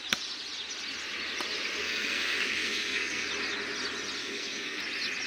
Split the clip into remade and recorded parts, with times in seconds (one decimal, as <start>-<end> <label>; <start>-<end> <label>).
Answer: 0.0-1.8 recorded; 1.8-3.3 remade; 3.3-4.2 recorded; 4.2-4.8 remade; 4.8-5.3 recorded